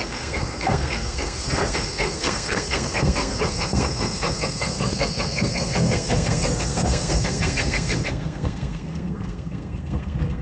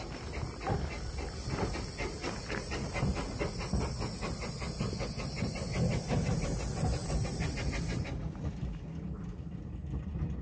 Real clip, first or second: second